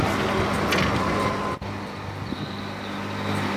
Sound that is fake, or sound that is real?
real